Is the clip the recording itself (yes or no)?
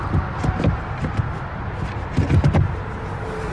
yes